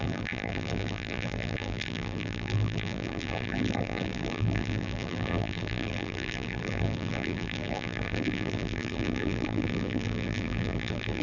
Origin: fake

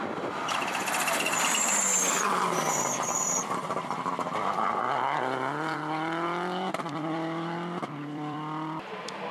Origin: fake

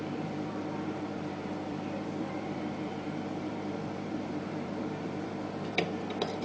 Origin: fake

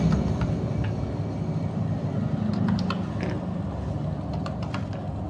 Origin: real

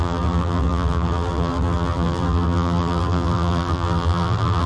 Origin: fake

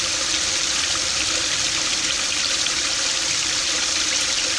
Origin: real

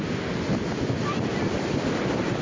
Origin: real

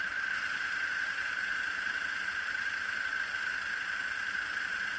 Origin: fake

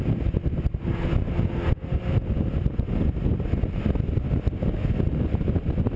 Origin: real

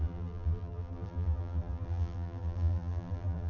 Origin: fake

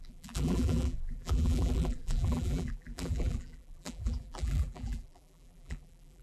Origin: fake